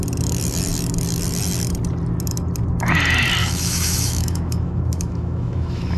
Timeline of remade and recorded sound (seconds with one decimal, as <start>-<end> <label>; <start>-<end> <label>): 0.0-3.4 recorded; 3.4-6.0 remade